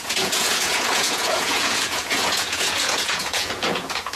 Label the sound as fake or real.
fake